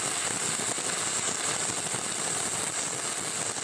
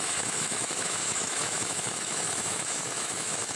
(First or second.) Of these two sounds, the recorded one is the first